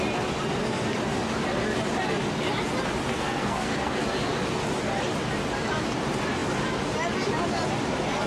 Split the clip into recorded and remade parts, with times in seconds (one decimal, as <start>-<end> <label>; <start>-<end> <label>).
0.0-3.1 recorded; 3.1-4.0 remade; 4.0-8.3 recorded